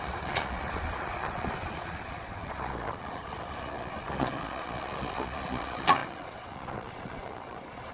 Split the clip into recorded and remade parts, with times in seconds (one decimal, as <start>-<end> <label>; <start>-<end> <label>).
0.0-7.9 remade